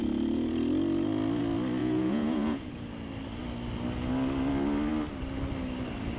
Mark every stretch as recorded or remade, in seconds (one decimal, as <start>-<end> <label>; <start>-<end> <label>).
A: 0.0-1.8 recorded; 1.8-2.7 remade; 2.7-6.2 recorded